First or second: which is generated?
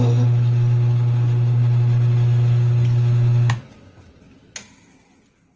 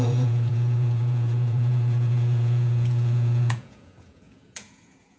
second